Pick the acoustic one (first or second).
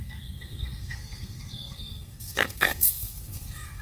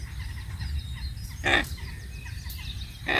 second